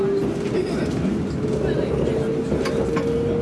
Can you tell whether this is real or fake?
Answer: real